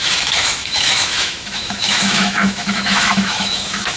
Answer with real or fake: fake